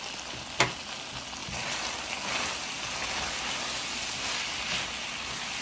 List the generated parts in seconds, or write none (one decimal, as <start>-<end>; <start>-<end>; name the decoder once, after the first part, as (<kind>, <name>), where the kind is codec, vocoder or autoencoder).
none